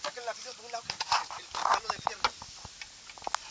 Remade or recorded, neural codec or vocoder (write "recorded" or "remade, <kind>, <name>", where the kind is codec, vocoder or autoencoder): recorded